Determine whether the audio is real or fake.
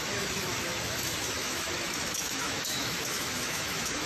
fake